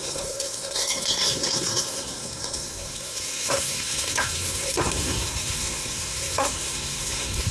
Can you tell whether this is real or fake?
fake